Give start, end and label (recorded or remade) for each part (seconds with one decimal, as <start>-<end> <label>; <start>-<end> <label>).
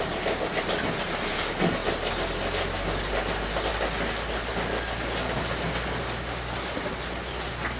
0.0-7.8 recorded